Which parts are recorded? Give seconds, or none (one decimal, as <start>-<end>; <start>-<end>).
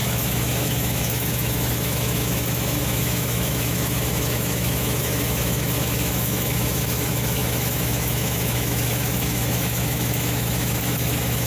none